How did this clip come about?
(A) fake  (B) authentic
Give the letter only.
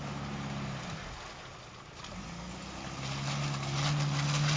B